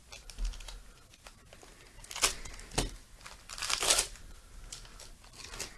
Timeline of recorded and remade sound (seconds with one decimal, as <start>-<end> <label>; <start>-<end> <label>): 0.0-5.8 recorded